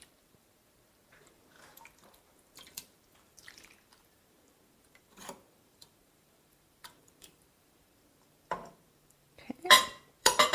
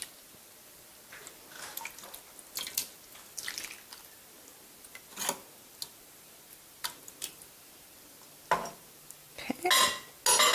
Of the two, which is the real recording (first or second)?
second